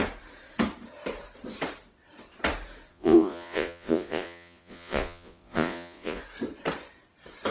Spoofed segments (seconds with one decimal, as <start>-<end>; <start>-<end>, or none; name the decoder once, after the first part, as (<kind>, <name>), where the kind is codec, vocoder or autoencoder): 2.9-6.2 (vocoder, Vocos)